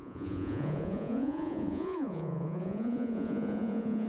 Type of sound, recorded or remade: remade